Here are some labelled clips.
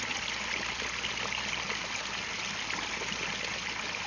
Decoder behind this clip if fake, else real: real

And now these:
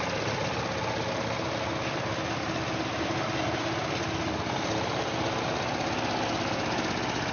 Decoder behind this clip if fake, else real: real